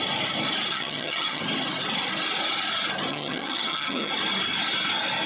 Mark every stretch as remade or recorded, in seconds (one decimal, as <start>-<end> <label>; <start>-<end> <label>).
0.0-0.7 recorded; 0.7-1.4 remade; 1.4-3.1 recorded; 3.1-4.1 remade; 4.1-5.3 recorded